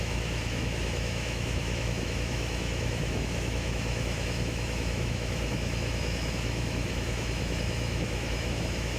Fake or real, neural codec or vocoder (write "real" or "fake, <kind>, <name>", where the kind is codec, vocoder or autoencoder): fake, autoencoder, DAC-VAE